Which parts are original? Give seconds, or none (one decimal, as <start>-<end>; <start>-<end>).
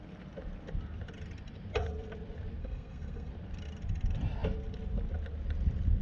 0.0-2.6; 3.3-6.0